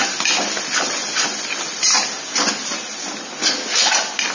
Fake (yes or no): no